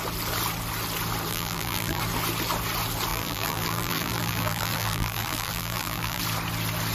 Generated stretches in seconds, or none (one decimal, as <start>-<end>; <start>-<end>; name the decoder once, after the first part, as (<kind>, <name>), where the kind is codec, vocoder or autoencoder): 1.3-2.0 (vocoder, BigVGAN v2); 3.1-6.2

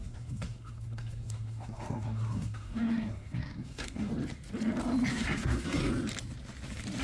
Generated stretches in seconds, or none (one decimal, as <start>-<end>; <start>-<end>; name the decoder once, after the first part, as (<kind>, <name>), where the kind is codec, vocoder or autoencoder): 0.0-4.1 (codec, SNAC); 5.1-5.8